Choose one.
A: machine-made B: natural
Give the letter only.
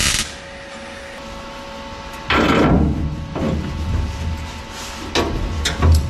B